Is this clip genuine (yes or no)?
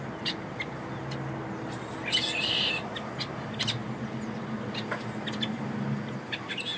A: yes